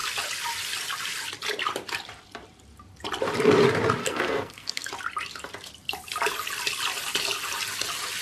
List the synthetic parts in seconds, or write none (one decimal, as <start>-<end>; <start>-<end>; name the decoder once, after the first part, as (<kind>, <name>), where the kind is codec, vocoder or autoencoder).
4.0-4.9 (codec, SNAC)